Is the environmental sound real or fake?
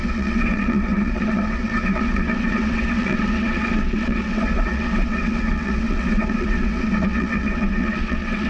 fake